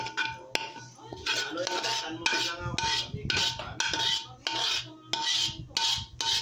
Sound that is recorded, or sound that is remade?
recorded